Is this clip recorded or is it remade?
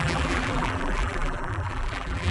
remade